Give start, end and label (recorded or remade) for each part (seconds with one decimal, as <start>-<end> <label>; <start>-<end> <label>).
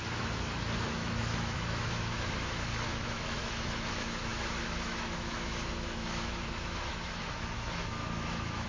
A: 0.0-8.7 remade